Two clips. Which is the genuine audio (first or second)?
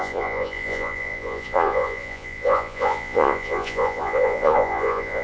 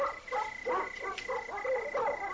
second